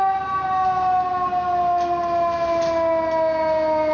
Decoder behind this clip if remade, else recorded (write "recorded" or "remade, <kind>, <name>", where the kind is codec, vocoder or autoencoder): recorded